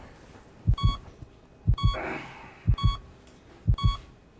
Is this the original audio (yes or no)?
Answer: yes